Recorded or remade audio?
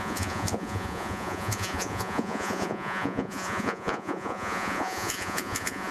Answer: remade